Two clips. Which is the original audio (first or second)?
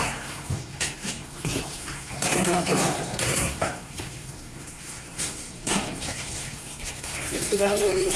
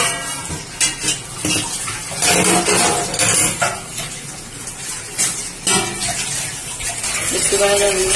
second